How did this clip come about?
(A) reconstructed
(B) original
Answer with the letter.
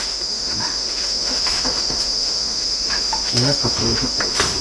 A